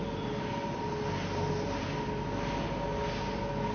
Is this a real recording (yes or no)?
yes